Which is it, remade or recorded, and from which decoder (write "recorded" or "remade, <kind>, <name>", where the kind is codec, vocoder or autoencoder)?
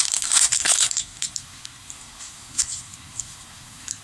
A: remade, codec, SNAC